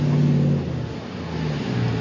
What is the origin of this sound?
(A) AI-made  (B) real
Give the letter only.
B